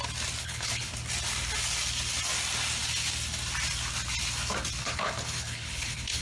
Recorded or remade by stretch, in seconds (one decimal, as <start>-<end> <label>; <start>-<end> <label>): 0.0-0.4 recorded; 0.4-0.9 remade; 0.9-4.8 recorded; 4.8-6.2 remade